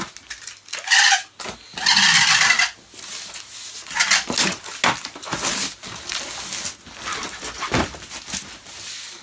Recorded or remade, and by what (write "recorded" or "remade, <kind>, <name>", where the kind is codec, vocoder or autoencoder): recorded